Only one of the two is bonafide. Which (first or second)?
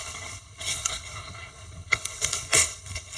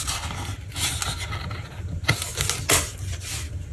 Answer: second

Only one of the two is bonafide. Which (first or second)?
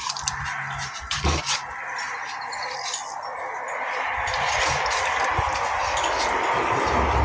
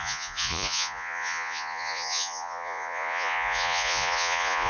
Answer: first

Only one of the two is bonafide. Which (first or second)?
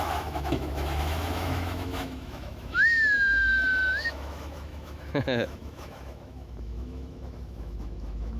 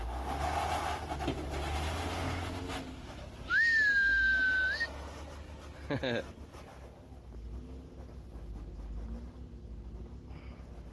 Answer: second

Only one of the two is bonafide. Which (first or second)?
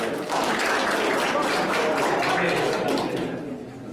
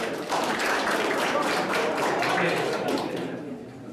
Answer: first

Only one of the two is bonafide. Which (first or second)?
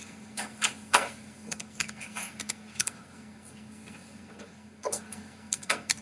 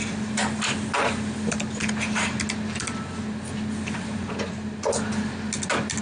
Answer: second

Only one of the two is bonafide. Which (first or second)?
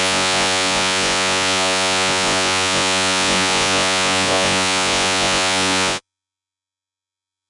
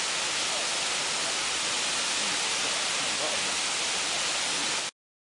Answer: second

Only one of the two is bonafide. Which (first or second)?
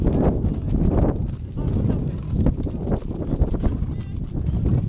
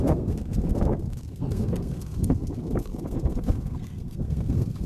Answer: first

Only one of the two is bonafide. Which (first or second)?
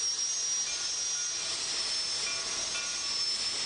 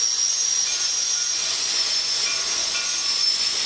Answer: first